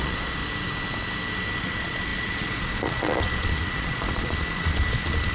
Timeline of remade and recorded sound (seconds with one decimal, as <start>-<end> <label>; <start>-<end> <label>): 0.0-0.4 remade; 0.4-1.6 recorded; 1.6-5.3 remade